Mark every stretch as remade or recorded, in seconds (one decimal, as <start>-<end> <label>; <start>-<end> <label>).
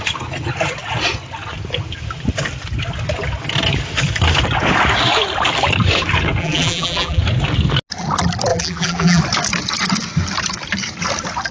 0.0-6.4 recorded; 6.4-7.2 remade; 7.2-8.5 recorded; 8.5-9.2 remade; 9.2-11.5 recorded